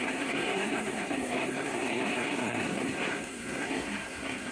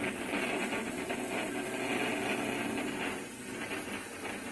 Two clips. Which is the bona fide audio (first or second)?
second